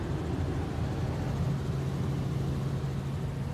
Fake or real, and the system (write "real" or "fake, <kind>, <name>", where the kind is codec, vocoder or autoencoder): real